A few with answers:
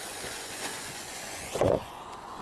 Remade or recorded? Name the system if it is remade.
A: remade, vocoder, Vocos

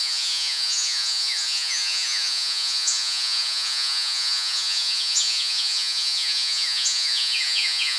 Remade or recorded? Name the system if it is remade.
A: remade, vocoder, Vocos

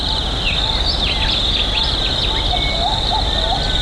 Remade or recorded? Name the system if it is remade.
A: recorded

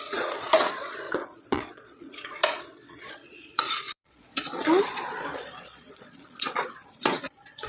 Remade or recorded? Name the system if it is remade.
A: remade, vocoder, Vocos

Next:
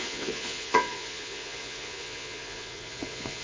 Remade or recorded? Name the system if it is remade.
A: remade, vocoder, Vocos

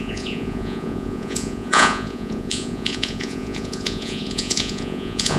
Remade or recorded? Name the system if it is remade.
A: remade, vocoder, Vocos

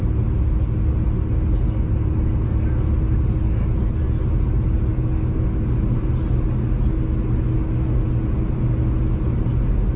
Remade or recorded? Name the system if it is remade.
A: recorded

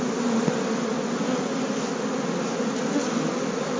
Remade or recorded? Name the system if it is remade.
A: recorded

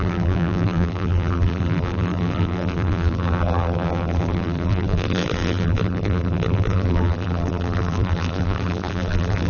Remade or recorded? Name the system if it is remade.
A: remade, vocoder, BigVGAN v2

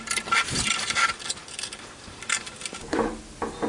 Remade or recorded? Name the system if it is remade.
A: recorded